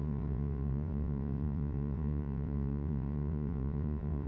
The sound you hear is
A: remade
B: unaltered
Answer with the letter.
A